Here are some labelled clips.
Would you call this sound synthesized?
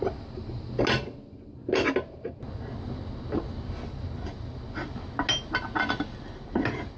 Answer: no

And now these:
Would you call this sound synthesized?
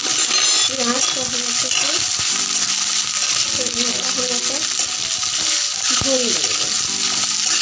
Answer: no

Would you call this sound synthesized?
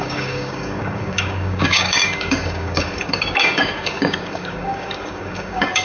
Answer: yes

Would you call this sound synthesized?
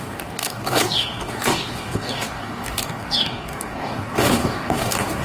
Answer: yes